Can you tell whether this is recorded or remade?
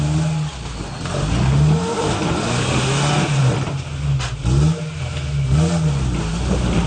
recorded